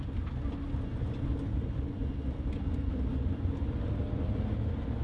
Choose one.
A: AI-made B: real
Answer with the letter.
B